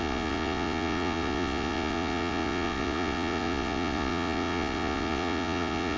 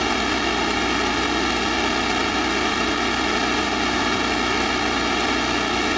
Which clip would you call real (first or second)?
second